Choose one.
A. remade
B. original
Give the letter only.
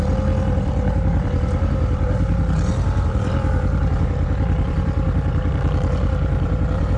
A